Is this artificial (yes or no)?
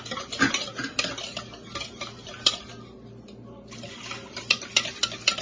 no